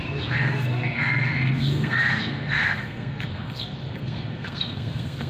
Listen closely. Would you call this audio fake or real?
fake